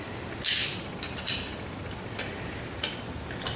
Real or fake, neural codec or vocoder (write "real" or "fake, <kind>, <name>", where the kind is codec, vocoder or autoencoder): real